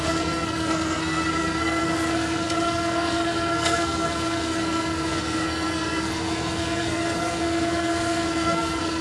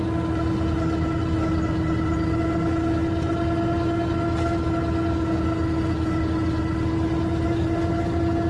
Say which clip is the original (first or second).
second